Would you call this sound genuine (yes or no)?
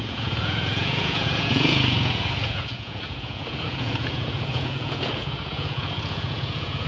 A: no